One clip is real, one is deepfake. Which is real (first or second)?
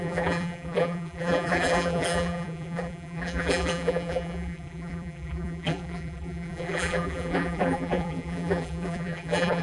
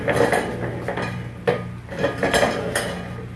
second